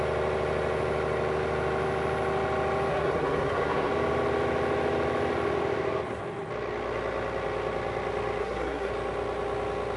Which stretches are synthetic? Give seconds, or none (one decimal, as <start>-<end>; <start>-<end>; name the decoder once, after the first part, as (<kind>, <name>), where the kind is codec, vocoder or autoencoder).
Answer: 2.9-3.9 (codec, SNAC); 8.4-8.9